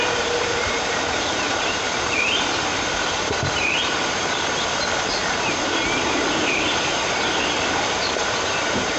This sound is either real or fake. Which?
fake